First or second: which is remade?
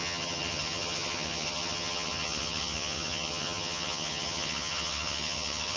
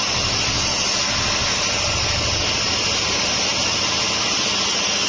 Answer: first